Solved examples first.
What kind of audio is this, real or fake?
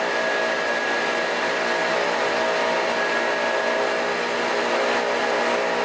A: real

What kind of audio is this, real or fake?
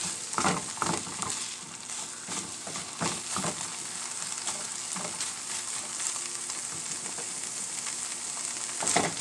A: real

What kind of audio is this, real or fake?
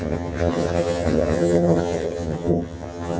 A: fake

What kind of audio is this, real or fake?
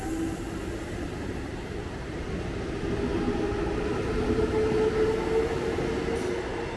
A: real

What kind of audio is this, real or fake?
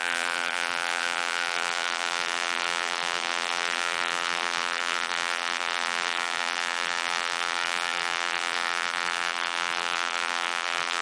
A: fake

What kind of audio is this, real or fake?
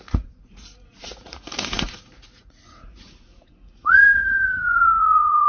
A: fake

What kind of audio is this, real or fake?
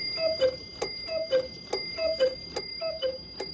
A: real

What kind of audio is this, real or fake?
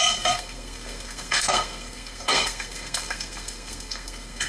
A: fake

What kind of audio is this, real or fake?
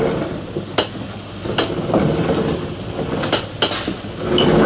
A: real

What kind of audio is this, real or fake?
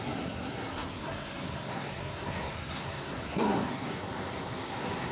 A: fake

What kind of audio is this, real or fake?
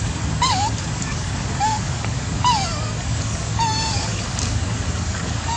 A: fake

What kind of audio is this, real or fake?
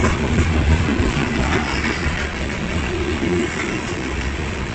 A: fake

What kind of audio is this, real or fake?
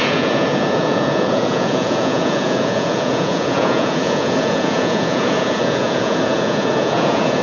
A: fake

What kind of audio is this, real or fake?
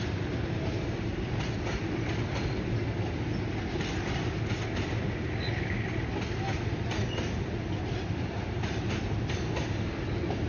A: real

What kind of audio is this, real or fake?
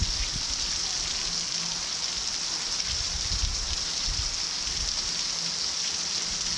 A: real